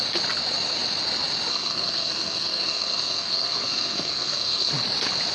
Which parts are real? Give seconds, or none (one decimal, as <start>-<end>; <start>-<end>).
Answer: 0.0-1.5; 4.7-5.3